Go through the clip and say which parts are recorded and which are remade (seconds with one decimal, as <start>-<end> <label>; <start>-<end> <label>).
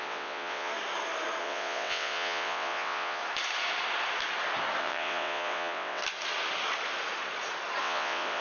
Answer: 0.0-0.7 remade; 0.7-1.4 recorded; 1.4-3.2 remade; 3.2-4.8 recorded; 4.8-6.0 remade; 6.0-7.8 recorded; 7.8-8.4 remade